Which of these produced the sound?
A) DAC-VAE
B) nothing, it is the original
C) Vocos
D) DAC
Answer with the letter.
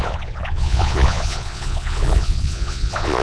C